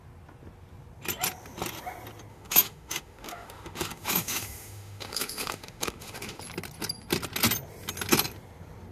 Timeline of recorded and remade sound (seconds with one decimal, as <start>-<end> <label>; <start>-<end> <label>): 0.0-2.3 recorded; 2.3-6.4 remade; 6.4-8.9 recorded